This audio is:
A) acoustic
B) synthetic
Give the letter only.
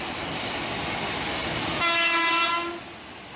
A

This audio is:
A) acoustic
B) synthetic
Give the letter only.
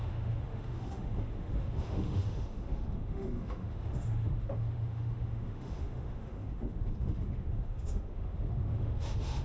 B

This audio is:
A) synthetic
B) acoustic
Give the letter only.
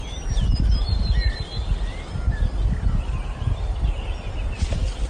B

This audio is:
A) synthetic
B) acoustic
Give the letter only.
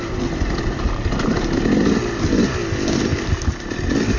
B